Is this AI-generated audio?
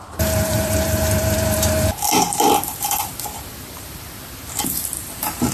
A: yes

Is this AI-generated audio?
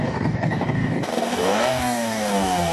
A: yes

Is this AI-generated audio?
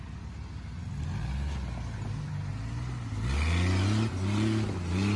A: no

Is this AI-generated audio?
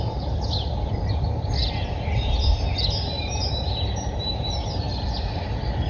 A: no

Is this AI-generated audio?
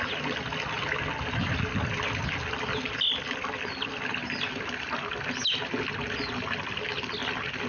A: no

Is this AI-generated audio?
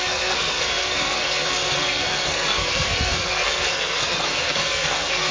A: yes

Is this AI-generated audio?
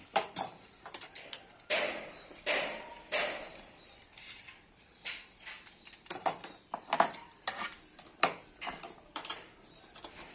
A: yes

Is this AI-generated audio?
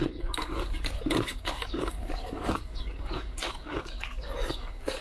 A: yes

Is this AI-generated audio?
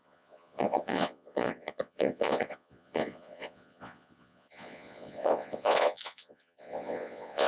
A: yes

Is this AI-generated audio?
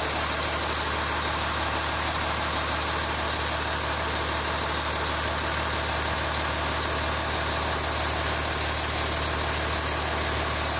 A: no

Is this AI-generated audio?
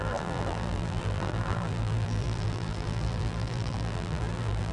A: yes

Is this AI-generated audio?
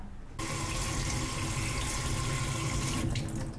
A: no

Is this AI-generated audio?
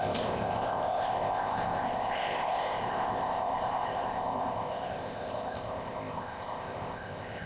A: yes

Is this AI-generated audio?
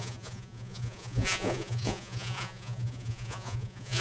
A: yes